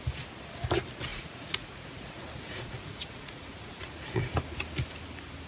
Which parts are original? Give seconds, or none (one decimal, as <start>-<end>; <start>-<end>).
0.0-1.1; 4.4-5.5